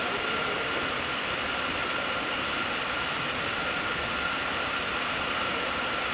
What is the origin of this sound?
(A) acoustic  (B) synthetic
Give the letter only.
A